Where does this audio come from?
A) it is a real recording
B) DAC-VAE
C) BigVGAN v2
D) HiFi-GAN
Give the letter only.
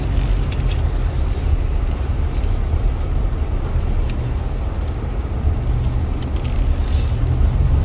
A